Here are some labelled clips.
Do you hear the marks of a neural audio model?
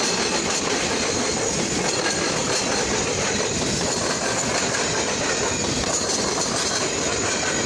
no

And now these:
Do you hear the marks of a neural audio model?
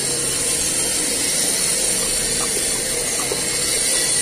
no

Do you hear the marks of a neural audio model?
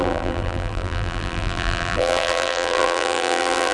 yes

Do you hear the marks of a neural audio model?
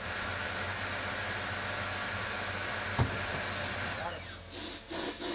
no